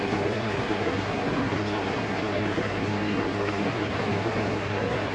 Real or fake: fake